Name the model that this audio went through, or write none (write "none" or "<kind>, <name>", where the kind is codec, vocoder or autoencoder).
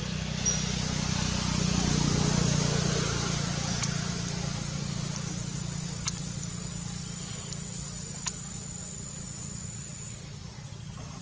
none